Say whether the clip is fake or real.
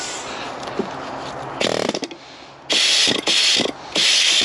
real